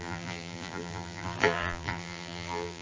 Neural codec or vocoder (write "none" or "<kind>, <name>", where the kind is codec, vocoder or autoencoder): vocoder, BigVGAN v2